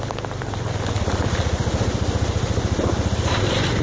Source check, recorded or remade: remade